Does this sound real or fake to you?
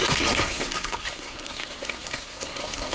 fake